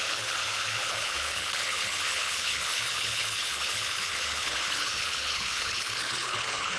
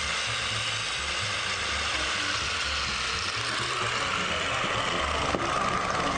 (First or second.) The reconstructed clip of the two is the first